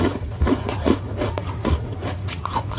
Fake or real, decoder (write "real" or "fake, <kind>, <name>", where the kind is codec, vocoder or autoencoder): fake, vocoder, Vocos